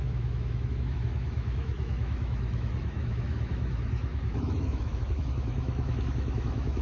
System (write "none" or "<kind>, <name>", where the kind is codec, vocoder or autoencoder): autoencoder, DAC-VAE